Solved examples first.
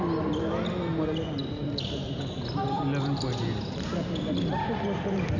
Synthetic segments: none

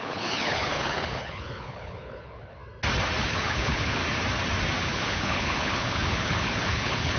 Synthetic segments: 0.0-2.6 (codec, HILCodec); 3.2-4.0; 4.8-7.2

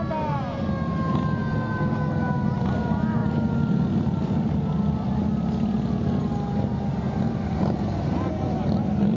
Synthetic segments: none

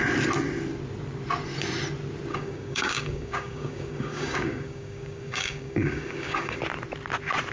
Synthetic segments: 2.3-6.6 (codec, DAC)

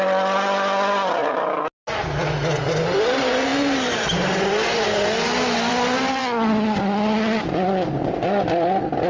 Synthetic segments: none

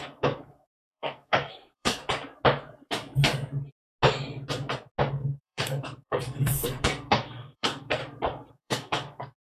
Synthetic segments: 0.0-2.0 (codec, SNAC); 5.1-8.0; 8.5-9.5

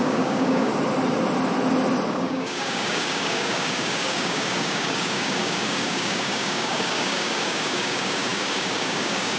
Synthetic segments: 0.0-0.7 (codec, DAC); 2.1-9.4